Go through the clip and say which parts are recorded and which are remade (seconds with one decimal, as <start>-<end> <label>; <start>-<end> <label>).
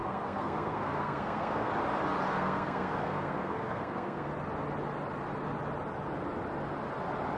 0.0-1.7 remade; 1.7-2.3 recorded; 2.3-4.3 remade; 4.3-7.4 recorded